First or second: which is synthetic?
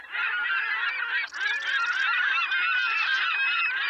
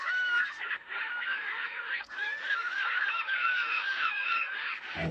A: second